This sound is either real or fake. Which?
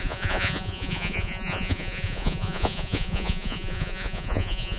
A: fake